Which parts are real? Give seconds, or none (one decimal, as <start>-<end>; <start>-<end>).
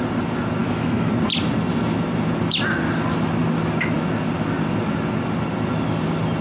0.0-0.6; 1.1-6.4